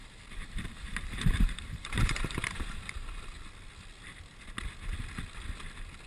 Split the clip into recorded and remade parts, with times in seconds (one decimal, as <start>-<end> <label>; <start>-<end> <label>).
0.0-3.1 remade; 3.1-6.1 recorded